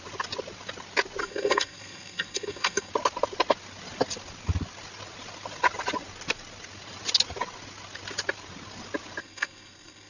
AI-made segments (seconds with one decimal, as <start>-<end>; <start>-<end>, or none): 1.2-2.9; 9.2-10.1